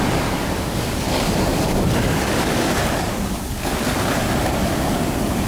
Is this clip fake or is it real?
fake